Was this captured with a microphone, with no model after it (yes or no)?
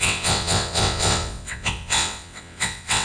no